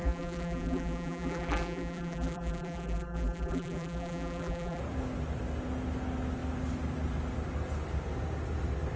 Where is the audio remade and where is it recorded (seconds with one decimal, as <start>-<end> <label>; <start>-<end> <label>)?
0.0-4.8 remade; 4.8-9.0 recorded